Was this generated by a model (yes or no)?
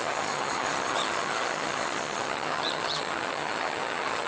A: yes